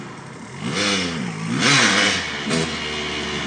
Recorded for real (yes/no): yes